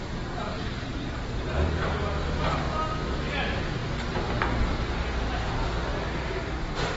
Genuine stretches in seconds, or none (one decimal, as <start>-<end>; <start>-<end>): 0.0-0.9; 2.2-5.9; 6.5-7.0